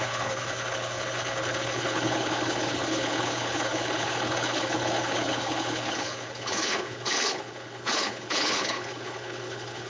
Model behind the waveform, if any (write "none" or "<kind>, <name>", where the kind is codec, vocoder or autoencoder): codec, HILCodec